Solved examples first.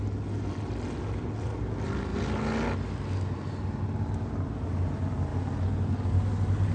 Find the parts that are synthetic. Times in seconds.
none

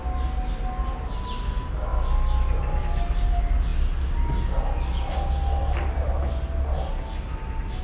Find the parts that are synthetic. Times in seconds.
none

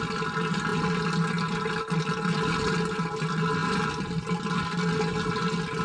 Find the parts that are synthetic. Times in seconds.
none

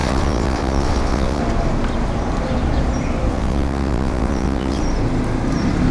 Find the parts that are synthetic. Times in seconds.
0.0-1.4 (vocoder, WaveNeXt); 3.3-4.8

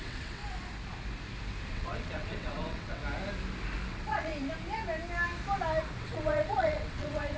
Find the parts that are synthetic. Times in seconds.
0.0-0.4 (vocoder, WaveNeXt); 1.7-3.0; 3.9-4.3; 6.0-7.4

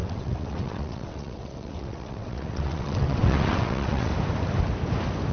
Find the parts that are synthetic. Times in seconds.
0.0-4.1 (vocoder, WaveNeXt)